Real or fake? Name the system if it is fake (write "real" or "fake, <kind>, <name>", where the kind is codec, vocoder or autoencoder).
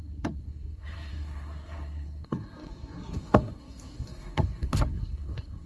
fake, codec, SNAC